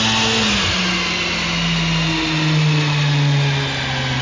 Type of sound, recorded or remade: recorded